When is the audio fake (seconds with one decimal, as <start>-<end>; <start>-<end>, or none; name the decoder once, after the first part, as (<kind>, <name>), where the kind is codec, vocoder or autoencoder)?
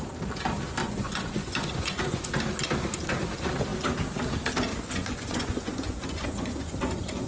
0.8-2.3 (vocoder, Vocos); 4.7-7.3